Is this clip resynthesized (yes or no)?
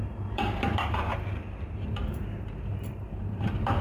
yes